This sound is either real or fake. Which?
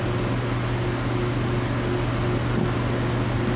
real